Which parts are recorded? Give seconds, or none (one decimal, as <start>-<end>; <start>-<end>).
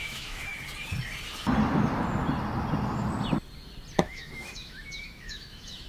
0.5-4.0